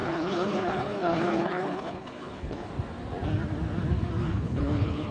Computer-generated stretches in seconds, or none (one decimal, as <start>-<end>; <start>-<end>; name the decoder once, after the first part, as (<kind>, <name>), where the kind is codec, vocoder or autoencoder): 0.0-2.7 (codec, HILCodec); 4.2-5.1